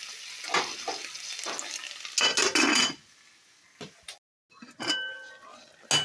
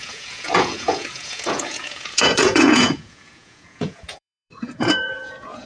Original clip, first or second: first